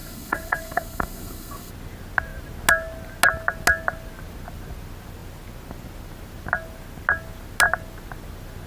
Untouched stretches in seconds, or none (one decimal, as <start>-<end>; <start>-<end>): 1.7-8.7